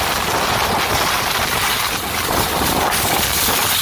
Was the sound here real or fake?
real